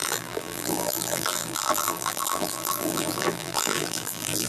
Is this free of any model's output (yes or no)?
no